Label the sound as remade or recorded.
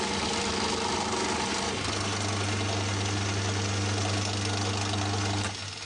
recorded